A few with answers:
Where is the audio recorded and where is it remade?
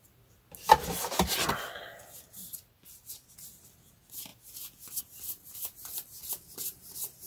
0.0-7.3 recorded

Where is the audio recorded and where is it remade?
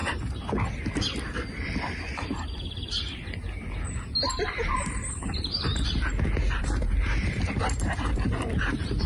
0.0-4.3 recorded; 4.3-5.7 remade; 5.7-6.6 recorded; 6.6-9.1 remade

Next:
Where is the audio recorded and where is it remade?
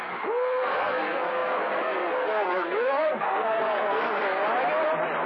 0.0-4.4 remade; 4.4-5.3 recorded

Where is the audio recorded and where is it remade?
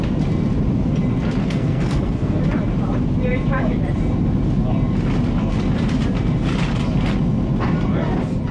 0.0-1.4 recorded; 1.4-2.4 remade; 2.4-8.5 recorded